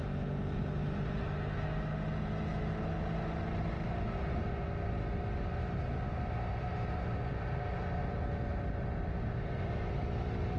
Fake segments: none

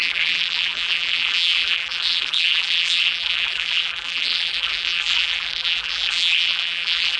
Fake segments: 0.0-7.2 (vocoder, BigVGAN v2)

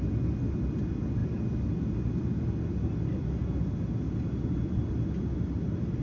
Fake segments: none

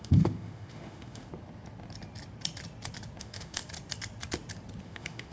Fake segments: 0.0-1.3 (autoencoder, DAC-VAE); 3.2-3.6; 4.8-5.3